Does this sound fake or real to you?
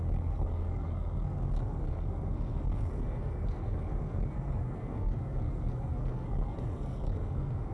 fake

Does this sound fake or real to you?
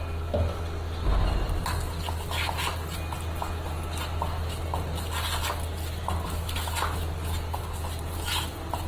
real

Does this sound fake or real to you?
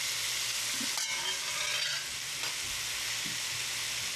real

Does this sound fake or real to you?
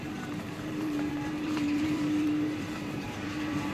fake